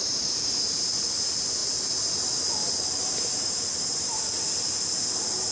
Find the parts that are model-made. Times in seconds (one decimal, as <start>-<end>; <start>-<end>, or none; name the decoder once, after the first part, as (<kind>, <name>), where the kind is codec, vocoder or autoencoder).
none